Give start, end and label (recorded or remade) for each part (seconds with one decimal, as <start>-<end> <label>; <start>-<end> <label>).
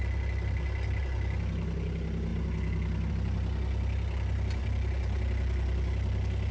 0.0-6.5 recorded